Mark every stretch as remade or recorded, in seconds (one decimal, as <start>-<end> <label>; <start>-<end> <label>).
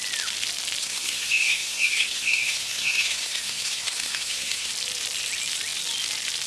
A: 0.0-0.8 recorded; 0.8-4.7 remade; 4.7-6.5 recorded